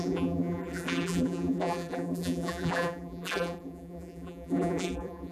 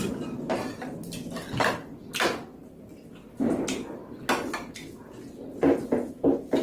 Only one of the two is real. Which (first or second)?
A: second